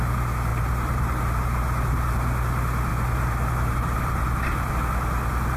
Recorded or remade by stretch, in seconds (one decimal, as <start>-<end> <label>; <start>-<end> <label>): 0.0-0.5 recorded; 0.5-1.2 remade; 1.2-2.9 recorded; 2.9-4.7 remade; 4.7-5.6 recorded